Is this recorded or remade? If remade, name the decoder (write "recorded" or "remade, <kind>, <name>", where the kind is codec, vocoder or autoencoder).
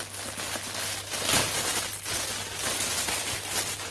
recorded